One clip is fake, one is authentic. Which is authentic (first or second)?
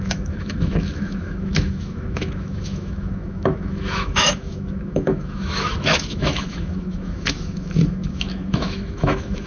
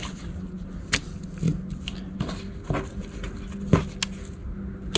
second